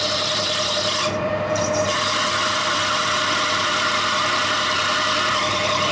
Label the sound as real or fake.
fake